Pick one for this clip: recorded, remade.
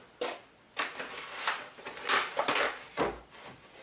recorded